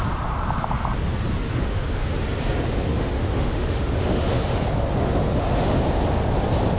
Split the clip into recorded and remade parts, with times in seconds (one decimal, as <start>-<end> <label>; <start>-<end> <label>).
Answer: 0.0-1.5 recorded; 1.5-2.2 remade; 2.2-2.9 recorded; 2.9-4.6 remade; 4.6-5.0 recorded; 5.0-5.8 remade; 5.8-6.8 recorded